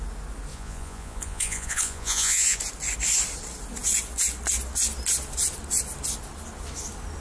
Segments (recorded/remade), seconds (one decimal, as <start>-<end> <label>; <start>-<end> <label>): 0.0-0.5 recorded; 0.5-2.6 remade; 2.6-7.2 recorded